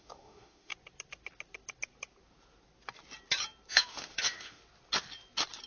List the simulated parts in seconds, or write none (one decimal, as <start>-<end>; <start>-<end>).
0.0-0.7; 3.7-4.6